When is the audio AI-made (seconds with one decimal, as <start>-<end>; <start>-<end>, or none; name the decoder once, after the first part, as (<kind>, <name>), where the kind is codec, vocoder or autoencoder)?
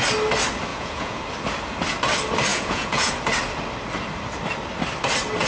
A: 0.7-1.2 (vocoder, Vocos); 2.5-3.1